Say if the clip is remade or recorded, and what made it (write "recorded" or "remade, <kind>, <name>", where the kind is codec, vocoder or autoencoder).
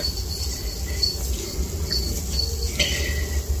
recorded